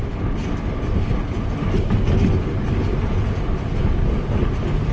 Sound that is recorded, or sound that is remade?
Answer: recorded